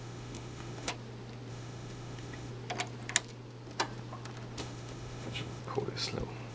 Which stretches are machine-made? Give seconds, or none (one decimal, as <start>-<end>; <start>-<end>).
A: 0.0-0.9; 1.5-2.5; 4.6-5.6